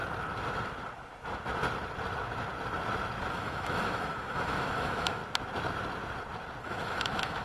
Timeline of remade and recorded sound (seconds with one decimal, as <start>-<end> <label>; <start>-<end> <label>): 0.0-3.3 recorded; 3.3-5.2 remade; 5.2-6.6 recorded; 6.6-7.4 remade

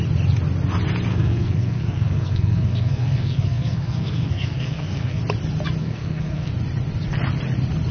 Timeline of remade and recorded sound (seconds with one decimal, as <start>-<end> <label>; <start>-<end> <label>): 0.0-1.1 recorded; 1.1-5.2 remade; 5.2-5.8 recorded; 5.8-6.5 remade; 6.5-7.9 recorded

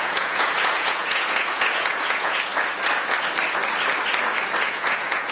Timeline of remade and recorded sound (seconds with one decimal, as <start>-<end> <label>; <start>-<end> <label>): 0.0-2.5 remade; 2.5-4.6 recorded; 4.6-5.3 remade

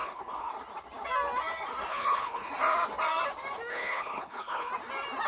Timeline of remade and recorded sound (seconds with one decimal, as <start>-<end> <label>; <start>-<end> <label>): 0.0-0.5 remade; 0.5-1.9 recorded; 1.9-2.5 remade; 2.5-3.7 recorded; 3.7-4.7 remade; 4.7-5.3 recorded

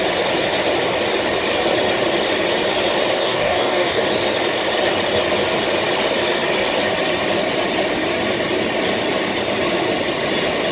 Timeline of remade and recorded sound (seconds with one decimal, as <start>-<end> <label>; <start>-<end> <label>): 0.0-3.2 recorded; 3.2-4.0 remade; 4.0-10.7 recorded

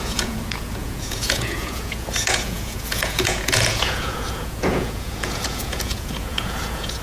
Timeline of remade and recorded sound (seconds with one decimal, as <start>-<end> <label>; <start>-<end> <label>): 0.0-7.0 remade

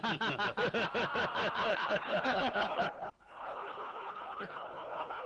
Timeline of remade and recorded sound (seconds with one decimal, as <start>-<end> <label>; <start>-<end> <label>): 0.0-1.7 recorded; 1.7-5.3 remade